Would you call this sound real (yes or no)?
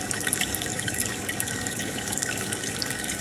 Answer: no